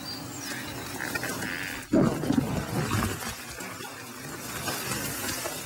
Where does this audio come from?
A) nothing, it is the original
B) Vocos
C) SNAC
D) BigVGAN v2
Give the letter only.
A